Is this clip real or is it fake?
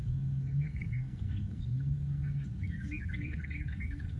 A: fake